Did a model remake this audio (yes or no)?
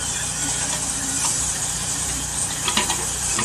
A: yes